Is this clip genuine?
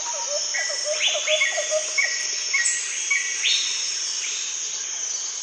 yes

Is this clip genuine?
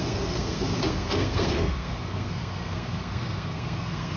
no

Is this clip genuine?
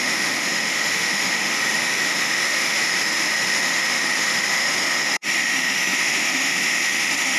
no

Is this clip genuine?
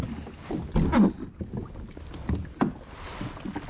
yes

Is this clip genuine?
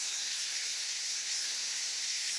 no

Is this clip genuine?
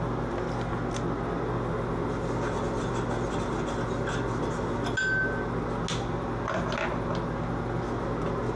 yes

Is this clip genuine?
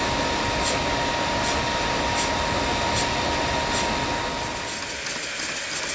yes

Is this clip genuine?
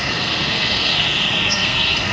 no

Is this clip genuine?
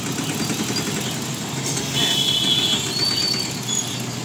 yes